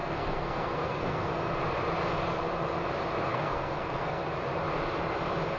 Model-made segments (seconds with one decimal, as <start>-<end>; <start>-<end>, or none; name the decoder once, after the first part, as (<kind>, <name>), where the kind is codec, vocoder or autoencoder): 0.0-1.3 (codec, SNAC); 3.3-4.2